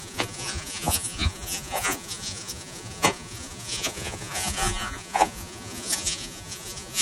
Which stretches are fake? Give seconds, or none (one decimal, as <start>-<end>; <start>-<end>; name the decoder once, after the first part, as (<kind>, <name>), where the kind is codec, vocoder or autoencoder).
0.0-7.0 (vocoder, Vocos)